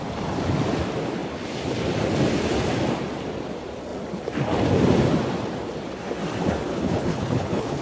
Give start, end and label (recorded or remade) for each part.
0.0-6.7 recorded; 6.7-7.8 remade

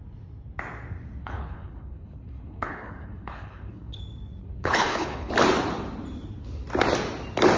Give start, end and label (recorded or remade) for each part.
0.0-1.2 recorded; 1.2-4.0 remade; 4.0-4.4 recorded; 4.4-5.3 remade; 5.3-7.6 recorded

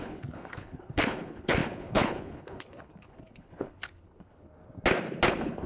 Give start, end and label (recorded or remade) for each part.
0.0-4.5 remade; 4.5-5.3 recorded; 5.3-5.7 remade

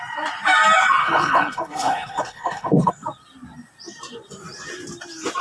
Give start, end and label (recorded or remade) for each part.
0.0-1.0 recorded; 1.0-2.9 remade; 2.9-5.4 recorded

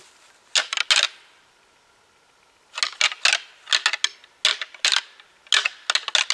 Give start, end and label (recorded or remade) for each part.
0.0-6.3 recorded